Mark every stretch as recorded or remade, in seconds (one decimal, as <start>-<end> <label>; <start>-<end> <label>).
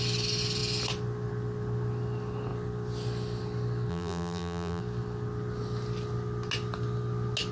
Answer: 0.0-3.9 recorded; 3.9-4.8 remade; 4.8-7.5 recorded